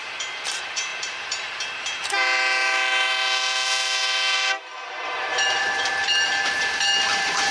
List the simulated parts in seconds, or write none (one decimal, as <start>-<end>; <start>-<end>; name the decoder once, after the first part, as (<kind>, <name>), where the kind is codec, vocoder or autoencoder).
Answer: 0.0-7.5 (vocoder, BigVGAN v2)